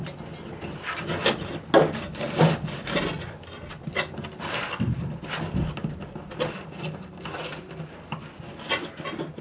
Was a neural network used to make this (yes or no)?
no